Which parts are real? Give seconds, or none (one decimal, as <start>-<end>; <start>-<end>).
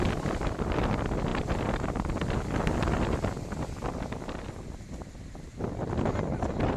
0.0-6.8